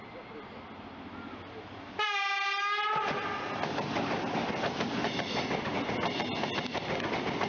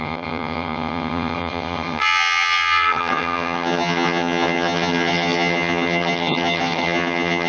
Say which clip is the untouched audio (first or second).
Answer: first